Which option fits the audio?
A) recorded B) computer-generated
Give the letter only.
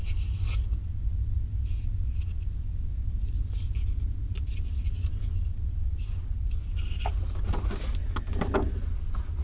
A